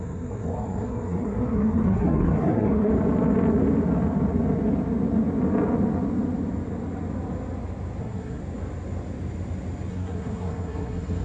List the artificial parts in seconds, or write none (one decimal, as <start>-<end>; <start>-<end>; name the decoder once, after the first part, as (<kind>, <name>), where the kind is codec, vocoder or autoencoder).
0.0-2.9 (codec, SNAC); 8.0-8.4; 9.9-11.2